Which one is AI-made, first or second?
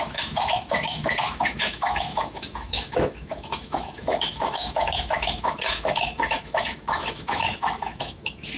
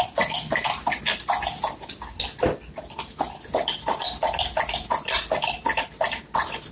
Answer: first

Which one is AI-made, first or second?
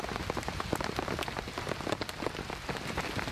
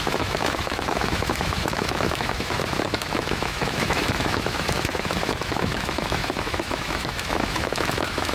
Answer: second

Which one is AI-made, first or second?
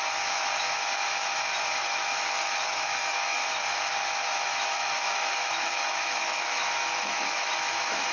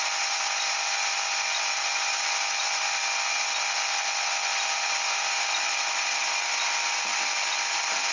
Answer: first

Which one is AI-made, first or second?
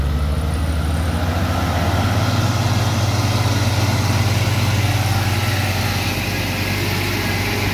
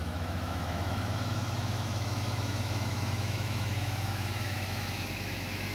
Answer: second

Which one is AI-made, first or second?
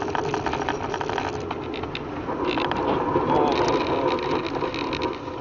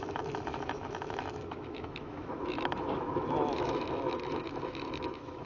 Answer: second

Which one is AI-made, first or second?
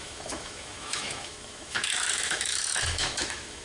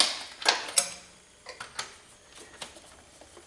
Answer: first